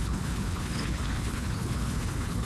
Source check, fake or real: fake